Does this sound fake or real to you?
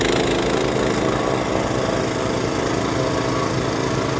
real